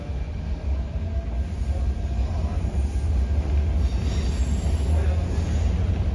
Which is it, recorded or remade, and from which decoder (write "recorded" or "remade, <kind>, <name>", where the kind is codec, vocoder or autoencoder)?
recorded